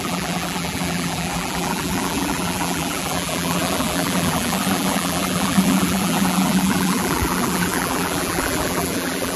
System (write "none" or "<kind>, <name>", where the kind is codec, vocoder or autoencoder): vocoder, BigVGAN v2